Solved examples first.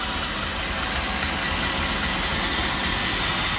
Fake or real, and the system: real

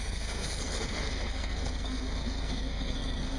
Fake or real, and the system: fake, codec, SNAC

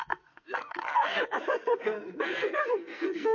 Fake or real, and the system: fake, codec, SNAC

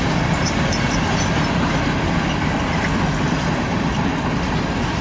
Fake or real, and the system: real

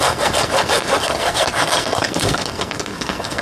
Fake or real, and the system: fake, codec, SNAC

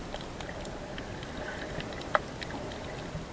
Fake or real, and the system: real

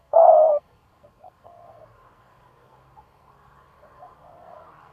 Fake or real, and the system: fake, codec, SNAC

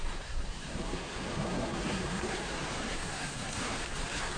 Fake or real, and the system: fake, codec, SNAC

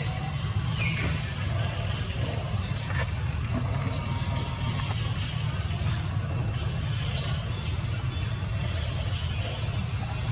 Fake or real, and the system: real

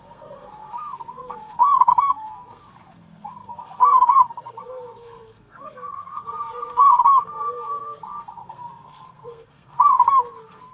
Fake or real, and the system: fake, codec, SNAC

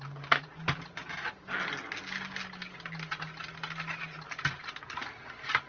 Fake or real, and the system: real